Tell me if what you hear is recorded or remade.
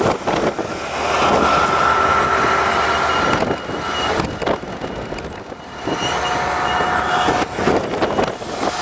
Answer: recorded